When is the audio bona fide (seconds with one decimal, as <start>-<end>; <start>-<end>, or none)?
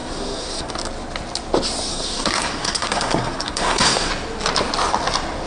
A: 0.7-1.9; 4.1-5.5